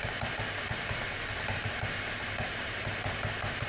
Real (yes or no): no